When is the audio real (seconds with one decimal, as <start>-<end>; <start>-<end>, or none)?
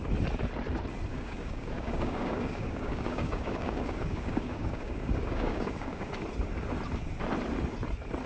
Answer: 0.0-1.1; 6.1-8.3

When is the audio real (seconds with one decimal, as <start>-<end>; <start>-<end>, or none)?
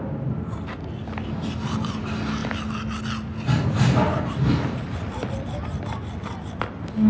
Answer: 0.0-7.1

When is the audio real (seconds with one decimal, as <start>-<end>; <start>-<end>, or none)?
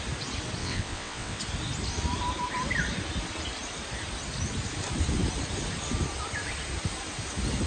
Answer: 0.0-0.6; 1.4-7.7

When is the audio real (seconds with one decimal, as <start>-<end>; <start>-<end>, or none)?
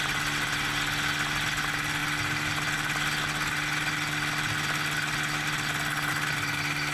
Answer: 0.0-6.9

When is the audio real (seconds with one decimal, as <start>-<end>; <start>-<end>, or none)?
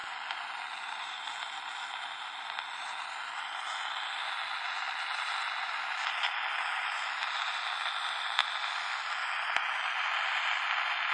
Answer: 0.0-11.1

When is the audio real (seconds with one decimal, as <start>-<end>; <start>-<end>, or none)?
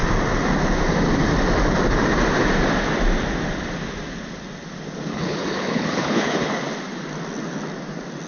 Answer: 0.0-5.1; 6.5-8.3